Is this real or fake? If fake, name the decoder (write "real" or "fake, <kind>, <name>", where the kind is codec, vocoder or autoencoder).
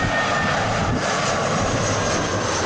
real